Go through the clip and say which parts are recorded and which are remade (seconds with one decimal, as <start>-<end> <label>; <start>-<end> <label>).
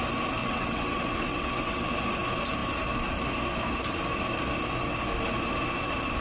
0.0-0.4 recorded; 0.4-1.9 remade; 1.9-6.2 recorded